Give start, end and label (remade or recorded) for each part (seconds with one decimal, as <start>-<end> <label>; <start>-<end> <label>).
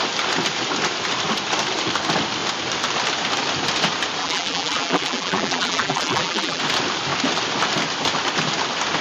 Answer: 0.0-4.2 recorded; 4.2-6.6 remade; 6.6-9.0 recorded